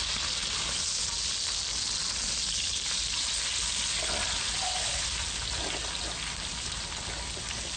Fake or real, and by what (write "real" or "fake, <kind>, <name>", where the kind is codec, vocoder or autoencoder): real